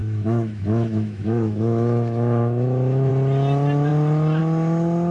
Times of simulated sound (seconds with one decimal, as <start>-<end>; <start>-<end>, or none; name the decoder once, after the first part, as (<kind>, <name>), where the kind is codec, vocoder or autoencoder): 0.0-3.1 (autoencoder, DAC-VAE)